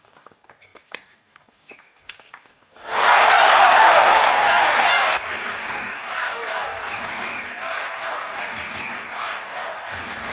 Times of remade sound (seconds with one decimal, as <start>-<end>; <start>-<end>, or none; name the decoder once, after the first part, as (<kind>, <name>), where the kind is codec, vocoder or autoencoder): 0.0-10.3 (codec, DAC)

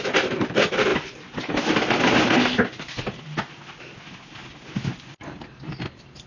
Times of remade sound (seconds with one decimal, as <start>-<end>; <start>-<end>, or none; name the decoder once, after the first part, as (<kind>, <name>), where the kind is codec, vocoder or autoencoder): none

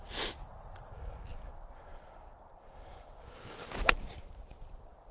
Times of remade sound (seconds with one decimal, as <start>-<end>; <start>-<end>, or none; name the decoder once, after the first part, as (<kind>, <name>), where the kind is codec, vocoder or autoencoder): none

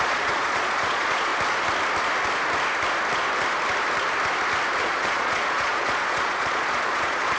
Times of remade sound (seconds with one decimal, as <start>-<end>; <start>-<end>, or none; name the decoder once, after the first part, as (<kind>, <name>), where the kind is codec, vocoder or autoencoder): 0.0-1.3 (vocoder, Vocos); 4.8-7.4

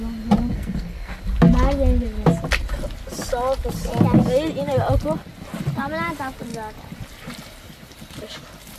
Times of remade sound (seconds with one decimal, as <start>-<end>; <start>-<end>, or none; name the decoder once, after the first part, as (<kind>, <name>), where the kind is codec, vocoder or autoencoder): 0.5-1.2 (codec, SNAC)